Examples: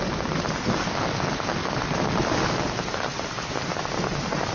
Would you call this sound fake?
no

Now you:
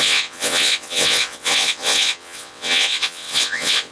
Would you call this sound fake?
yes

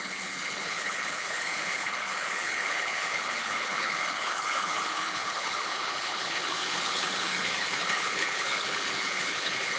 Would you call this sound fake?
yes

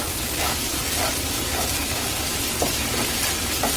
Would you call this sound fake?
no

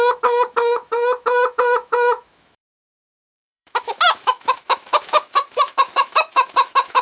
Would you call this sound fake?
yes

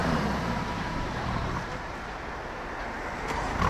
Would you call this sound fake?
yes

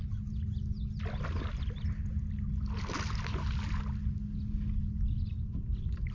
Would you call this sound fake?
no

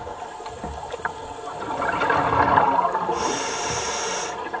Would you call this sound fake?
no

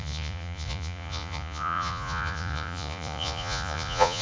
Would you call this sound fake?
yes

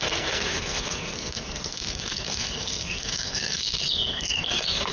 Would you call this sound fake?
yes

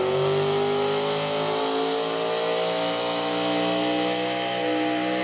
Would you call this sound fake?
no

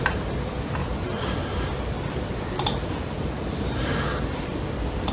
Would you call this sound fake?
no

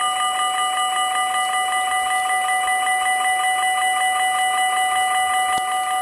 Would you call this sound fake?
no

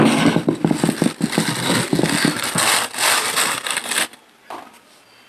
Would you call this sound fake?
no